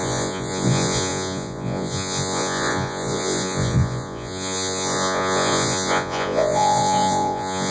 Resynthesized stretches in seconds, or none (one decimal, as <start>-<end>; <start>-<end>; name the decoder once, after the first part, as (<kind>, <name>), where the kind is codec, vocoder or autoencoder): 0.0-7.7 (vocoder, Vocos)